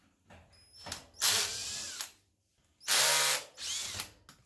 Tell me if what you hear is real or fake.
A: real